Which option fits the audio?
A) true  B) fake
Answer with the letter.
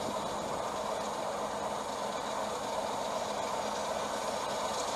A